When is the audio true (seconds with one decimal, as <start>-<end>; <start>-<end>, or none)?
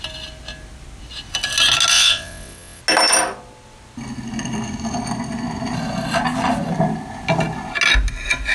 0.0-1.9; 2.8-8.5